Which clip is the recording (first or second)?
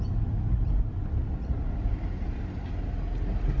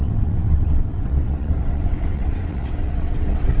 first